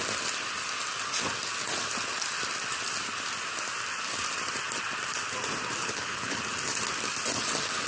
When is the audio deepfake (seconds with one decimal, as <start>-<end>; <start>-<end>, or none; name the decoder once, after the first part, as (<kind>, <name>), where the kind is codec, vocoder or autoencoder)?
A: 5.8-6.4 (codec, HILCodec)